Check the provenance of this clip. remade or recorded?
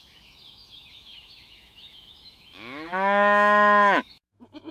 remade